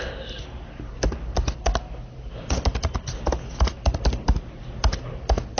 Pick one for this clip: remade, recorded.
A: recorded